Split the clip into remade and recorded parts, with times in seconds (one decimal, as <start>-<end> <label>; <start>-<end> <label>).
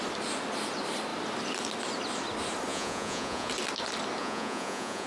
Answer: 0.0-2.7 recorded; 2.7-3.5 remade; 3.5-4.2 recorded; 4.2-5.1 remade